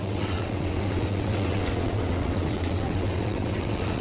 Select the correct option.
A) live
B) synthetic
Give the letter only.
B